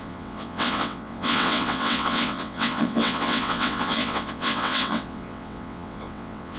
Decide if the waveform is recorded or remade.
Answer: remade